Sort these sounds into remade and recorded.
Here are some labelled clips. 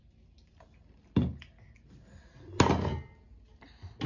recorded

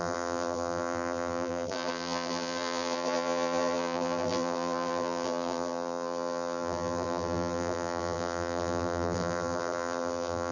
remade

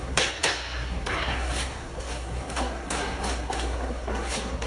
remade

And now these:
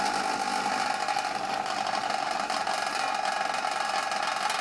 recorded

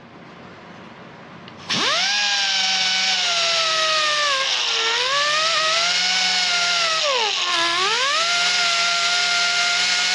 recorded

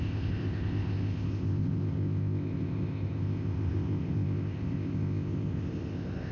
remade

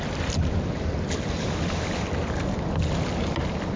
recorded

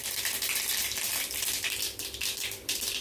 remade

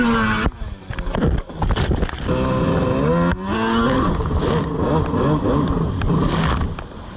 recorded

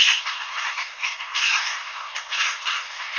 remade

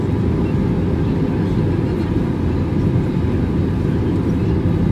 recorded